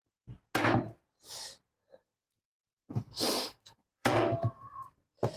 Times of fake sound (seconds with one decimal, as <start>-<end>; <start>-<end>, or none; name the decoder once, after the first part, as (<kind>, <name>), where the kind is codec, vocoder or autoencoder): 1.8-5.0 (codec, SNAC)